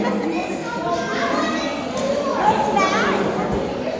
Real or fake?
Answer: real